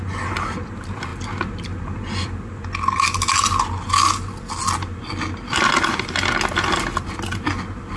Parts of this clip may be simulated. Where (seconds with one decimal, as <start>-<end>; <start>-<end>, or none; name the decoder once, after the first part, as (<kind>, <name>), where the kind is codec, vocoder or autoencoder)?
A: none

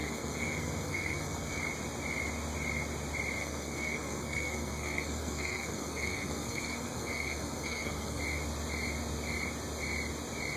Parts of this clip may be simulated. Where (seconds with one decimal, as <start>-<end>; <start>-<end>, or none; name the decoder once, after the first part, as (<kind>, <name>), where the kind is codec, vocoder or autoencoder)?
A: 0.0-1.6 (codec, SNAC); 3.4-8.2

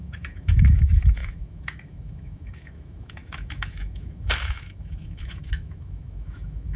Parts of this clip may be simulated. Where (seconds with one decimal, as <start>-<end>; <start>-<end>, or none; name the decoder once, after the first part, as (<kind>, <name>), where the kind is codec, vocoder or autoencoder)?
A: 0.0-6.8 (autoencoder, DAC-VAE)

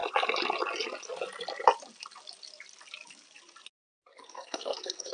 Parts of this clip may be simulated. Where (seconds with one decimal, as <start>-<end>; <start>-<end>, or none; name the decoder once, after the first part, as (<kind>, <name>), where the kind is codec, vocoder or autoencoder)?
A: 4.1-5.1 (codec, SNAC)

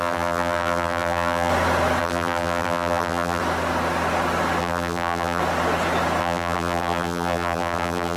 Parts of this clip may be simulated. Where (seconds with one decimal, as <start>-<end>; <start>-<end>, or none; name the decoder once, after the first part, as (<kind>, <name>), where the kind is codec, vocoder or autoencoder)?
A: 0.0-1.5 (vocoder, BigVGAN v2); 2.0-3.4; 4.6-5.4; 6.2-8.2

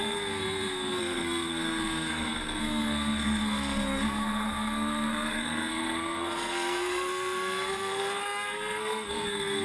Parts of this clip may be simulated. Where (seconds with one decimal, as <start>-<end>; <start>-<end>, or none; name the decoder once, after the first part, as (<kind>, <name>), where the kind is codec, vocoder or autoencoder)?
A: 0.0-9.6 (codec, SNAC)

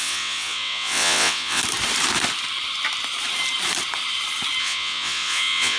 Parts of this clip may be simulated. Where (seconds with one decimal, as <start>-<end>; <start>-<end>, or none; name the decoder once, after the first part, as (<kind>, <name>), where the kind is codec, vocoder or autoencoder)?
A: 0.0-1.6 (vocoder, WaveNeXt); 4.6-5.8